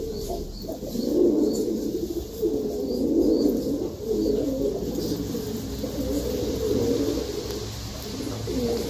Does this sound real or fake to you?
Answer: real